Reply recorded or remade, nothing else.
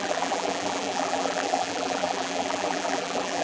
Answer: remade